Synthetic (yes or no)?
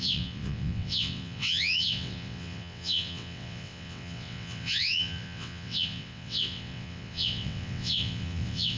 yes